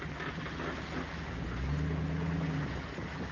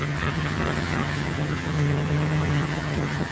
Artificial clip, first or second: second